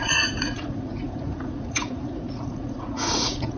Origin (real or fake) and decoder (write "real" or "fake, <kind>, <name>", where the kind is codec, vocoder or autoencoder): fake, vocoder, Vocos